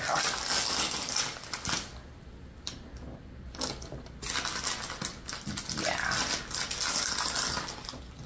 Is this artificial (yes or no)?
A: no